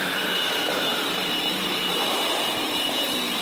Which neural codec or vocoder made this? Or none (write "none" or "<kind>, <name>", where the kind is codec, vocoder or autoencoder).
vocoder, BigVGAN v2